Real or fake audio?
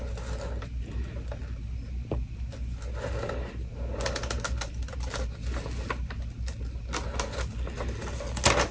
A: real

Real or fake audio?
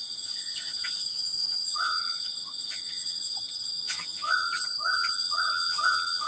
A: fake